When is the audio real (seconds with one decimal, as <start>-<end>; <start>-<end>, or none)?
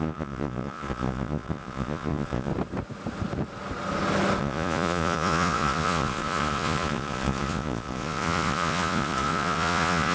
2.5-4.4